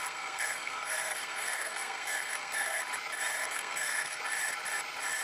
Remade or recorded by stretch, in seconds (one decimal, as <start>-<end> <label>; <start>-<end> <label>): 0.0-2.8 remade; 2.8-3.4 recorded; 3.4-4.2 remade; 4.2-5.2 recorded

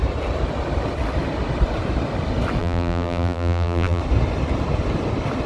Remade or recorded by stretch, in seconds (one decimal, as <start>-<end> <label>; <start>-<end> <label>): 0.0-2.6 recorded; 2.6-4.0 remade; 4.0-5.5 recorded